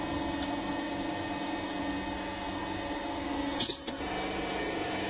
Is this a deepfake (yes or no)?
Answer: no